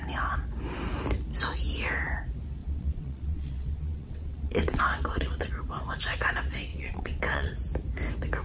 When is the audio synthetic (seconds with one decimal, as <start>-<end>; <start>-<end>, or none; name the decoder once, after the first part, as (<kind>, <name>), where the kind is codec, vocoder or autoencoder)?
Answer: 2.6-5.5 (vocoder, WaveNeXt); 6.7-7.5